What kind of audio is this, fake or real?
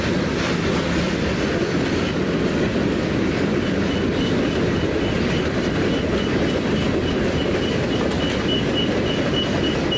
real